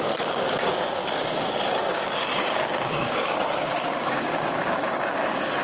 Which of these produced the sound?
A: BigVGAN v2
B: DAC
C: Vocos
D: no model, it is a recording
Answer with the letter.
B